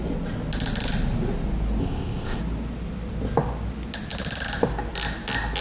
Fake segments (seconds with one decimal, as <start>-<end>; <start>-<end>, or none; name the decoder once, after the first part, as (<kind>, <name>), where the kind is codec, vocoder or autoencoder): 1.8-2.4 (codec, ZipCodec)